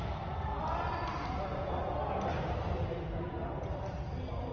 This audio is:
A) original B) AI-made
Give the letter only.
A